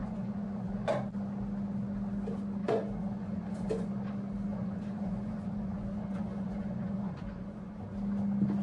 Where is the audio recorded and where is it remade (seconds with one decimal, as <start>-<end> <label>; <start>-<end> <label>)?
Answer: 0.0-0.9 remade; 0.9-2.6 recorded; 2.6-3.9 remade; 3.9-4.5 recorded; 4.5-7.8 remade; 7.8-8.6 recorded